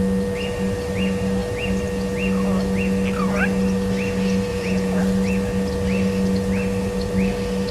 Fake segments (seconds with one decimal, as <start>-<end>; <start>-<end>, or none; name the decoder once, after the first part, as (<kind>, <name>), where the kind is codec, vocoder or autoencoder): 4.5-5.0 (vocoder, Vocos)